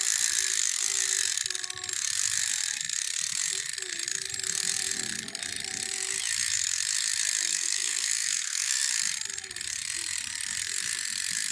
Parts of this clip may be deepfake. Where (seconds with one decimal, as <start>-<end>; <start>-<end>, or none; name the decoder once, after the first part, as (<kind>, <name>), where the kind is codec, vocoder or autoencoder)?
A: 7.5-8.9 (codec, SNAC)